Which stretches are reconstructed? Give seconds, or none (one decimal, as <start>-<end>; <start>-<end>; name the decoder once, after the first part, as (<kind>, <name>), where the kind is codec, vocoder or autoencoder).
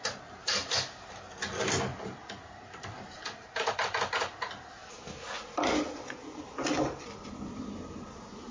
0.4-1.1 (vocoder, BigVGAN v2); 1.9-4.9